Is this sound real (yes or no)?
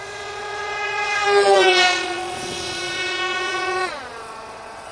no